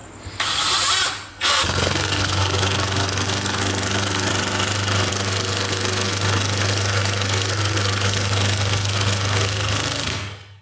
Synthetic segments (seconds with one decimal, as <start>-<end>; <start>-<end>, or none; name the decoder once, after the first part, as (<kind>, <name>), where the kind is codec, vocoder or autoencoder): 1.3-4.3 (codec, SNAC); 5.1-10.6